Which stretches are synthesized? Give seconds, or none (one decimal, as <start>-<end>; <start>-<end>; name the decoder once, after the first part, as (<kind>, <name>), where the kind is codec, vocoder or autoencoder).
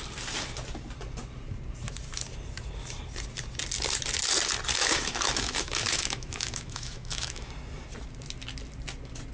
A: 4.8-7.5 (autoencoder, DAC-VAE)